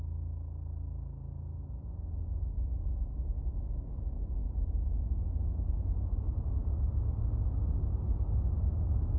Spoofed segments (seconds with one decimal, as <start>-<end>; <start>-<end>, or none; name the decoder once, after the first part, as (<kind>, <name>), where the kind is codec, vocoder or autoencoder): none

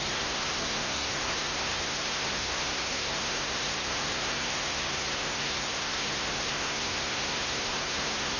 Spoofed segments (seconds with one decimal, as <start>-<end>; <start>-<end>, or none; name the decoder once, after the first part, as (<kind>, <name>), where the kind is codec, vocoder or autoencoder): 0.0-8.4 (codec, SNAC)